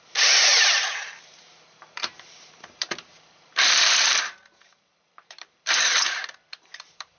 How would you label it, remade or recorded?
remade